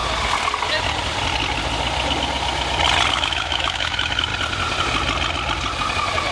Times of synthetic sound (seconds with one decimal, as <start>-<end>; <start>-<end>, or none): 3.1-4.3